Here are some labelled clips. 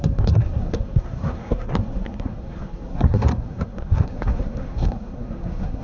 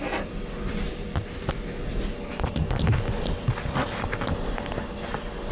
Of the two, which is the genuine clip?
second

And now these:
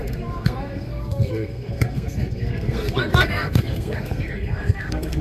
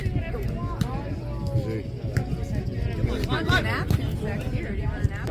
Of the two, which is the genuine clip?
second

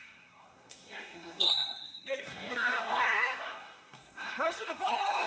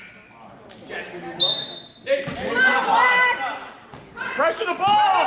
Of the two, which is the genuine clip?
second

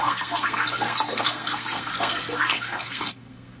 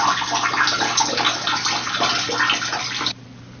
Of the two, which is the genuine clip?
second